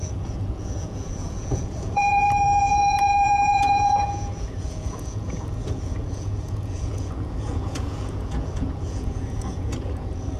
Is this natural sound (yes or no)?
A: no